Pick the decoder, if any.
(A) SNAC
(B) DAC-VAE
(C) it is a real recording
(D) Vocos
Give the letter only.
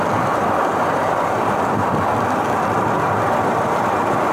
C